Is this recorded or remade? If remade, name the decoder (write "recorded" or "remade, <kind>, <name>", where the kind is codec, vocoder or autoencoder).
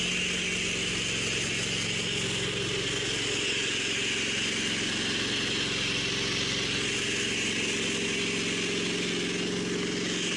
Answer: recorded